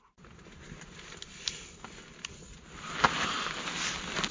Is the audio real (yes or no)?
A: yes